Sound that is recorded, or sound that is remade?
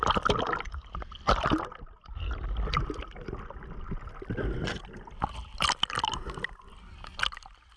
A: recorded